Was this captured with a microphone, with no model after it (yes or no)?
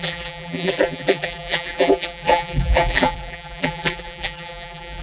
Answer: no